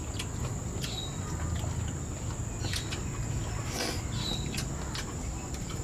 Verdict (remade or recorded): recorded